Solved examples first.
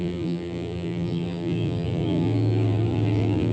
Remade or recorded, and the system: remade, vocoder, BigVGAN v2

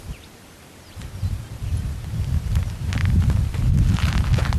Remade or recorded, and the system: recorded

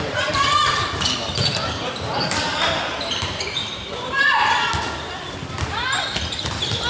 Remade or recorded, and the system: remade, vocoder, BigVGAN v2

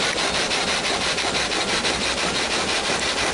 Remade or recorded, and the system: recorded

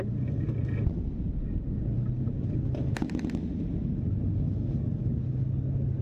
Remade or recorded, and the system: recorded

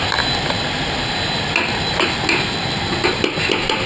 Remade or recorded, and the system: recorded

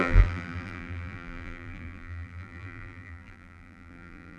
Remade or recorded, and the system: remade, vocoder, BigVGAN v2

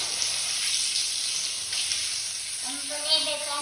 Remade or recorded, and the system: recorded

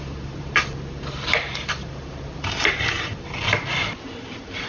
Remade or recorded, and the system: remade, vocoder, BigVGAN v2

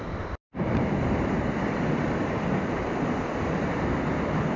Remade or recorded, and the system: remade, vocoder, BigVGAN v2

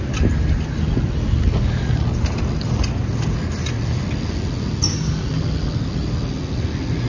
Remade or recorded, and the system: recorded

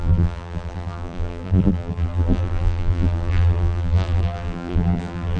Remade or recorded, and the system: remade, vocoder, BigVGAN v2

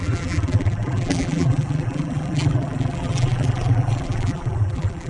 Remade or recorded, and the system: remade, vocoder, BigVGAN v2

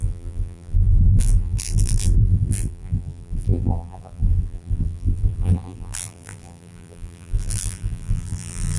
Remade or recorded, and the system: remade, vocoder, BigVGAN v2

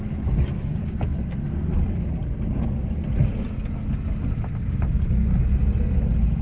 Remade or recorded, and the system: recorded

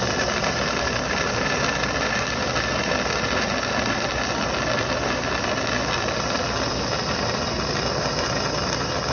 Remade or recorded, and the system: recorded